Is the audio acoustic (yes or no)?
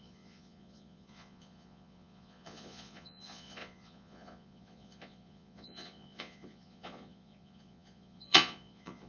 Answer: no